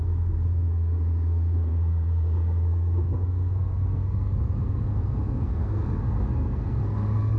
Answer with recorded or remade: remade